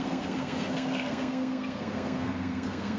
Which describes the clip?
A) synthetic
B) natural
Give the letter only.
A